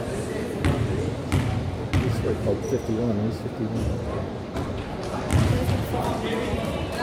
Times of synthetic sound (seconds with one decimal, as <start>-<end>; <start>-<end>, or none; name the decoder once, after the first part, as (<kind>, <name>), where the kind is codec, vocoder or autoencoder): none